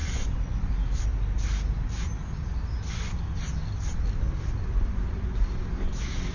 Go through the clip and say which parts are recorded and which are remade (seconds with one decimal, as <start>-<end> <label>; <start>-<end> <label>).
0.0-0.7 remade; 0.7-6.3 recorded